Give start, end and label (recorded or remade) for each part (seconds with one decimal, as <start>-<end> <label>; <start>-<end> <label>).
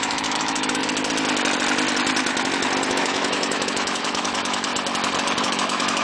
0.0-0.8 remade; 0.8-2.9 recorded; 2.9-4.7 remade; 4.7-5.4 recorded; 5.4-6.0 remade